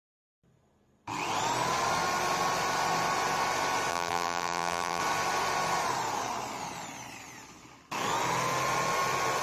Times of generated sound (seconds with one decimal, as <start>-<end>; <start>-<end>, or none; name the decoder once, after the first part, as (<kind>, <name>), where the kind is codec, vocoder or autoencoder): 3.9-5.0 (vocoder, BigVGAN v2)